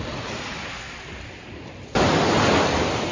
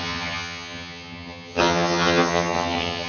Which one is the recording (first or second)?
first